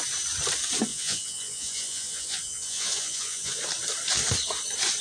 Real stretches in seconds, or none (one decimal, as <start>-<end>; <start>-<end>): 0.0-0.9; 3.6-5.0